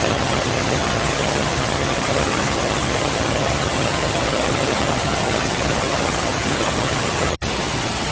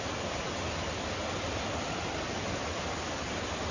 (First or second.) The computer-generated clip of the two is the first